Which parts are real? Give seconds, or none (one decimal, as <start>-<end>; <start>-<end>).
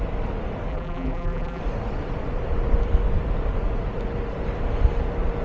0.0-0.7; 1.6-5.4